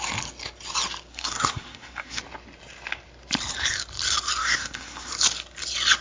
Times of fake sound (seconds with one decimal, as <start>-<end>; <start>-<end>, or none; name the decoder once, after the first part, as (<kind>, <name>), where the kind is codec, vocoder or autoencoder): 1.1-2.2 (codec, SNAC); 4.4-5.1